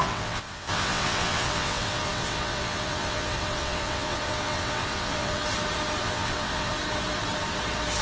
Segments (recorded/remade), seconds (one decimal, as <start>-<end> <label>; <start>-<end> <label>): 0.0-5.4 remade; 5.4-6.0 recorded; 6.0-6.7 remade; 6.7-8.0 recorded